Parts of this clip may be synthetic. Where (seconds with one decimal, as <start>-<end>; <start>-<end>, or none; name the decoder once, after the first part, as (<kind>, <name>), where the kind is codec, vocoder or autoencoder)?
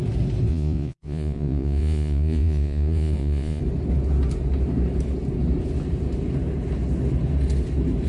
0.5-3.6 (vocoder, Vocos)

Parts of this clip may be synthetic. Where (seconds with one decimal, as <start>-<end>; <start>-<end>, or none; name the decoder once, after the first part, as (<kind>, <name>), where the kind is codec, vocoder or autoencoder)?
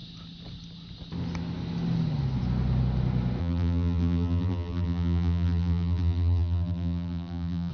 3.4-7.7 (vocoder, BigVGAN v2)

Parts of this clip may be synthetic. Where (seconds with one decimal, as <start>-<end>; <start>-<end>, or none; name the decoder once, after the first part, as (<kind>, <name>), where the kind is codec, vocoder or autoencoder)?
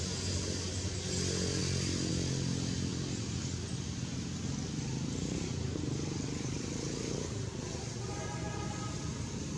none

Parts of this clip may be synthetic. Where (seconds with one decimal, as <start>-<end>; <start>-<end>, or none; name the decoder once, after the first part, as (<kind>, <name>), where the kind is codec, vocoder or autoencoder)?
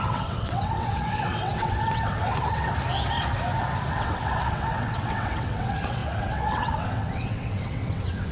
0.0-2.7 (vocoder, WaveNeXt); 3.9-8.3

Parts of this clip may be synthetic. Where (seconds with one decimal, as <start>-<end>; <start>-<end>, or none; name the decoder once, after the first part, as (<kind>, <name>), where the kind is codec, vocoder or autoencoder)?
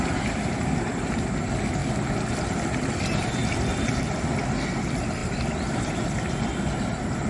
0.0-3.4 (vocoder, BigVGAN v2); 4.0-7.3